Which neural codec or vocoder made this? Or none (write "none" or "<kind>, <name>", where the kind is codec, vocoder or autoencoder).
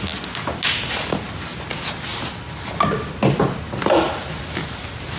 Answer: none